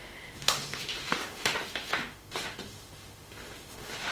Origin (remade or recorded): remade